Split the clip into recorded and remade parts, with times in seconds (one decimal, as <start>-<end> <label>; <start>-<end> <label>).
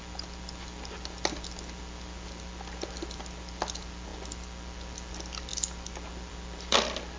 0.0-7.2 recorded